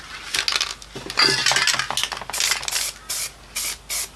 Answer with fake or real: real